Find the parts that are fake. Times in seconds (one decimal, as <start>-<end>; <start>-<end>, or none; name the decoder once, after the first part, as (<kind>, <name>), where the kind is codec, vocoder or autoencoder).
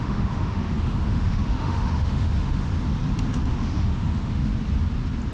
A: 0.0-2.7 (autoencoder, DAC-VAE); 3.5-4.5